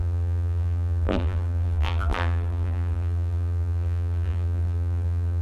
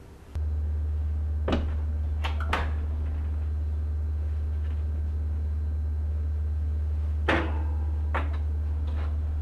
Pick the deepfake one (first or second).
first